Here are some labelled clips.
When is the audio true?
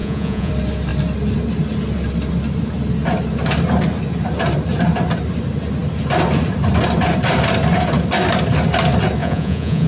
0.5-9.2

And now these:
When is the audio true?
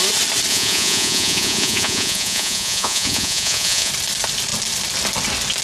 0.0-0.5; 3.9-5.6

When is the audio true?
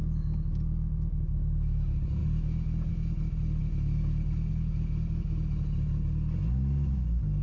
0.0-7.4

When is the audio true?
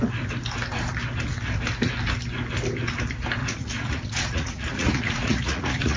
0.0-3.4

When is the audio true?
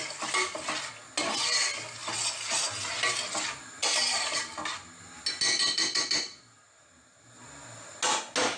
0.0-8.6